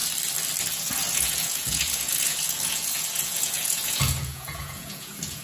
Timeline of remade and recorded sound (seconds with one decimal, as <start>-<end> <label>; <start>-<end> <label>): 0.0-0.7 recorded; 0.7-5.4 remade